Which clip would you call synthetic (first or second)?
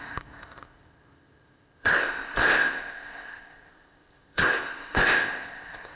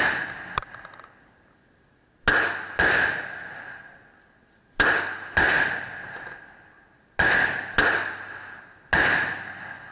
first